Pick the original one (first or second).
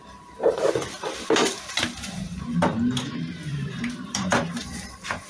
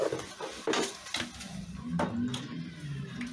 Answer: second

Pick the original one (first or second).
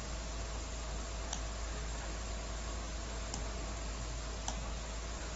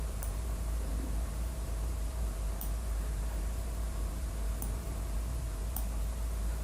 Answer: first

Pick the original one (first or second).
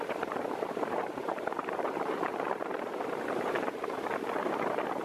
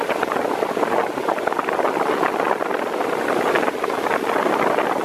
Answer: second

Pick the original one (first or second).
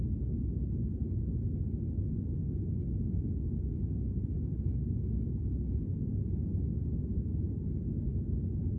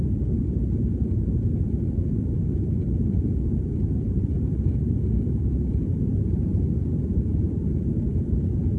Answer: first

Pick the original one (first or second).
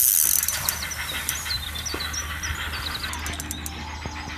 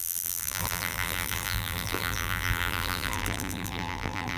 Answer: first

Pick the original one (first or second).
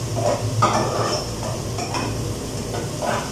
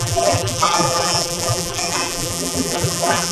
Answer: first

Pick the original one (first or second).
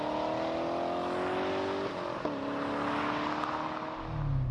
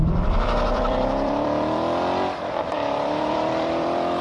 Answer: first